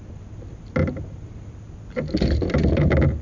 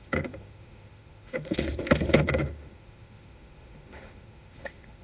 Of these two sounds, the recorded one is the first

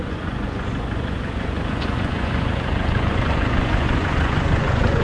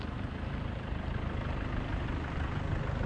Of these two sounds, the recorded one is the second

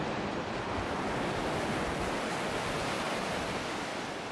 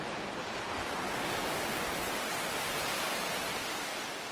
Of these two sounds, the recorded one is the second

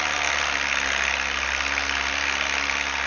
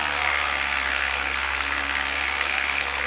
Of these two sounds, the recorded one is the first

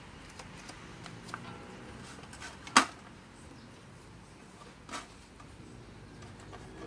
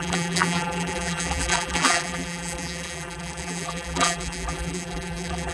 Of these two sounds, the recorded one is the first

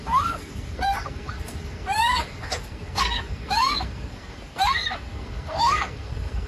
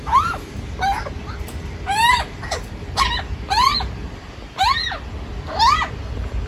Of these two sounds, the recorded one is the second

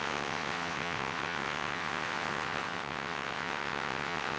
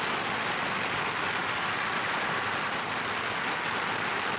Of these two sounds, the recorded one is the second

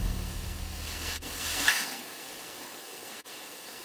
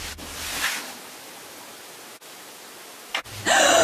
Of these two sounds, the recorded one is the second